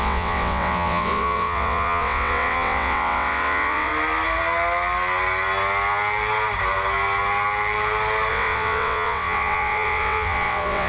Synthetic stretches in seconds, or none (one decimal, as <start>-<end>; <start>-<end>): 0.0-3.9; 8.3-10.9